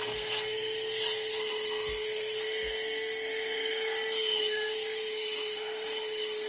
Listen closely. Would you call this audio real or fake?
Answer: fake